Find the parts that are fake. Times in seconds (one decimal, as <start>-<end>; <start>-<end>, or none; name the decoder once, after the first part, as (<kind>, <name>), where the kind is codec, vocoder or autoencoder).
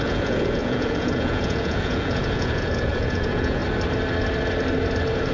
0.0-3.6 (vocoder, Vocos)